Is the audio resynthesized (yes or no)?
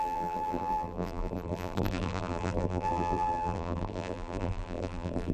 yes